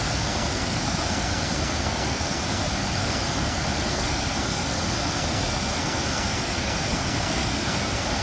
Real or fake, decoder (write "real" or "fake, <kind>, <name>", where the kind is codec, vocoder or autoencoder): fake, codec, SNAC